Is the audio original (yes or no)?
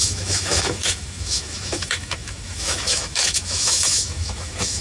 no